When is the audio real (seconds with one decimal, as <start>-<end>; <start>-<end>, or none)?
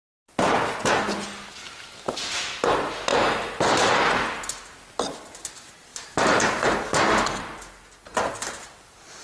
0.0-3.1; 3.9-5.9; 7.0-9.2